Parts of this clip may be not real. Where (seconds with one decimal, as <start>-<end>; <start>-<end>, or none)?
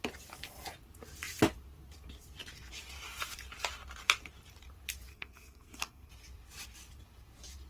5.1-6.1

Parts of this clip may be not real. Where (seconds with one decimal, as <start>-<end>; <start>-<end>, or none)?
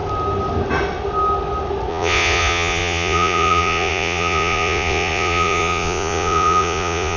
1.9-7.2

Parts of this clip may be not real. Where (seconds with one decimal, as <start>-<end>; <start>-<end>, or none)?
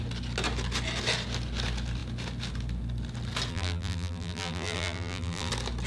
3.5-5.5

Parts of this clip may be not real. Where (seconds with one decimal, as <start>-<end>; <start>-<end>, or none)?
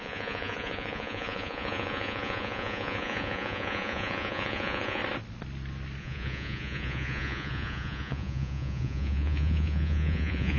0.0-5.0; 6.0-10.6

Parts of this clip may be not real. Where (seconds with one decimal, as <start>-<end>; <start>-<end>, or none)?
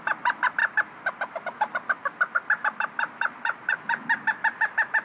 none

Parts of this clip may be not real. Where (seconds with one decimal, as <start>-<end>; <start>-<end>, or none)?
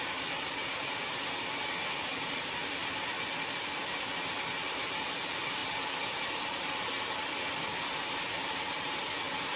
none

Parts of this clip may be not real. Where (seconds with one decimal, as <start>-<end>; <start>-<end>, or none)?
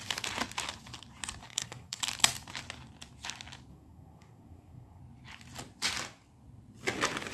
1.4-2.0; 3.7-5.0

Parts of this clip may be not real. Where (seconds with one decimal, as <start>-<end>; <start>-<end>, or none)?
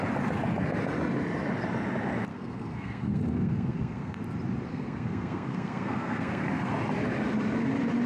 2.3-4.2; 4.7-6.7